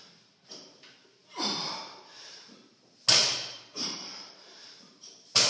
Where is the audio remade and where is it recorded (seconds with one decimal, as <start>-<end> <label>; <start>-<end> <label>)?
0.0-3.2 recorded; 3.2-5.5 remade